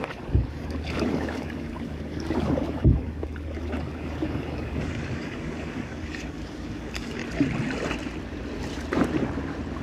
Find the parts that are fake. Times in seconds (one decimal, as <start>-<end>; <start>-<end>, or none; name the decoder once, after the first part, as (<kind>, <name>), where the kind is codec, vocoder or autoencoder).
0.0-7.2 (codec, DAC)